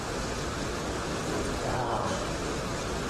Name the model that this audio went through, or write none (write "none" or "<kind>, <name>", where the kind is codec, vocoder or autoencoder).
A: none